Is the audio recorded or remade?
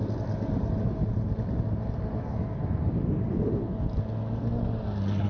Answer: recorded